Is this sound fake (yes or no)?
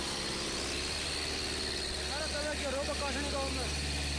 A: no